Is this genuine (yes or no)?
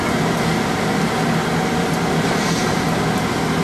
yes